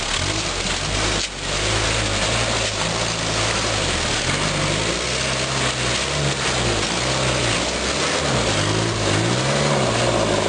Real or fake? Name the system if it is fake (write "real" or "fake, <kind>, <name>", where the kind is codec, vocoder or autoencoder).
real